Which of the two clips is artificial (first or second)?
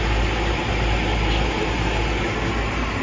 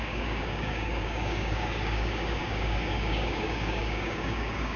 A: second